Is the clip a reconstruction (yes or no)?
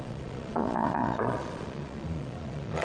yes